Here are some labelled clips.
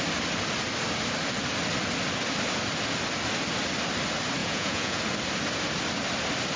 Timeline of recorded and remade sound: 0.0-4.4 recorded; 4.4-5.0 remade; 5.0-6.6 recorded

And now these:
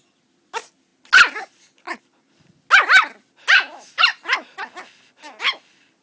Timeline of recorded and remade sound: 0.0-6.0 recorded